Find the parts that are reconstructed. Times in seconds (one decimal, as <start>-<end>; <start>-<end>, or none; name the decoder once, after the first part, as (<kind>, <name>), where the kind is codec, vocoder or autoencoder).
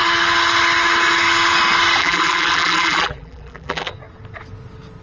2.0-3.9 (vocoder, BigVGAN v2)